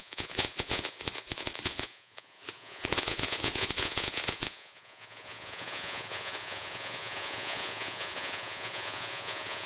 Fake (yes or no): yes